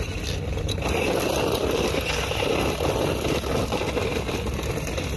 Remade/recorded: recorded